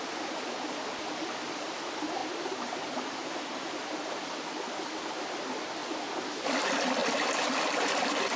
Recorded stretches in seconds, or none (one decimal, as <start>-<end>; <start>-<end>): 0.0-8.4